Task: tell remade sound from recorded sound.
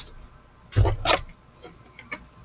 recorded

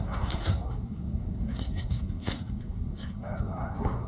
remade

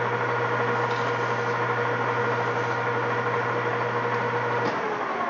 recorded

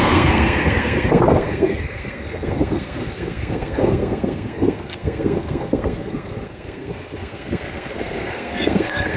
remade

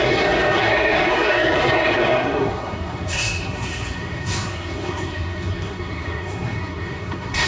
remade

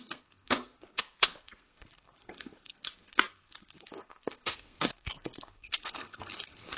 remade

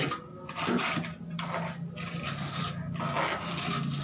recorded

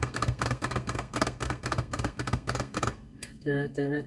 remade